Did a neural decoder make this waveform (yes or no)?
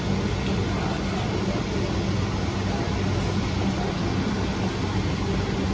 no